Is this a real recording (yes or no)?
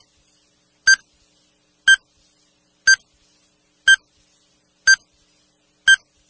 yes